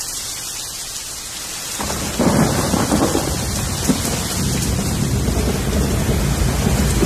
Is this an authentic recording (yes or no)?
yes